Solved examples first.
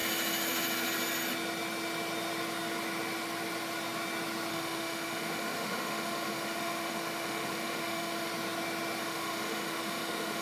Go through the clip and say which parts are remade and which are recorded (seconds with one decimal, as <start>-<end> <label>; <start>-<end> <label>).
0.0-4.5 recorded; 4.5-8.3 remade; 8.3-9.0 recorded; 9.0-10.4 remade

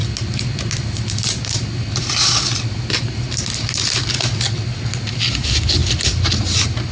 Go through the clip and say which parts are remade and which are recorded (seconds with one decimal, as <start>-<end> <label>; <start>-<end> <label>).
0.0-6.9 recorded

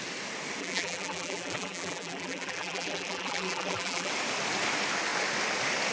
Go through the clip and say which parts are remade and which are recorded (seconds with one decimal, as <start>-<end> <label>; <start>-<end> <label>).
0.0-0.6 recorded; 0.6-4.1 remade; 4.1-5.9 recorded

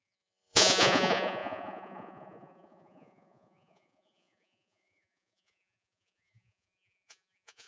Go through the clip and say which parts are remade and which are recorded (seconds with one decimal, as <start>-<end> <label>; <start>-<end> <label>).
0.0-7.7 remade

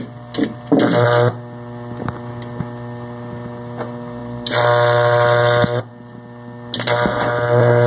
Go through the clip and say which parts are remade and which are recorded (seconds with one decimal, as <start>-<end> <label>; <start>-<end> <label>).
0.0-7.9 recorded